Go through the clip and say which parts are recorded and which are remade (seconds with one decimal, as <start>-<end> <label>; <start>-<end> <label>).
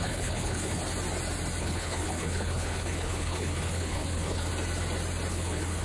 0.0-0.8 remade; 0.8-1.6 recorded; 1.6-4.5 remade; 4.5-5.3 recorded; 5.3-5.8 remade